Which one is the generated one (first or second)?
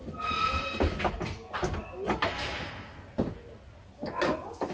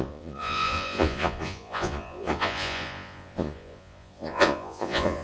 second